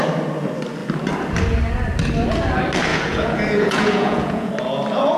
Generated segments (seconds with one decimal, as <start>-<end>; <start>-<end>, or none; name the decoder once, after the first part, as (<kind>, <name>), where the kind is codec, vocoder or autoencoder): 2.9-4.5 (vocoder, Vocos)